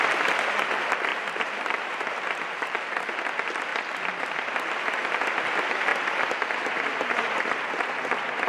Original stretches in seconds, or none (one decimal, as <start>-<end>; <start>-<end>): 0.0-1.1; 3.1-8.5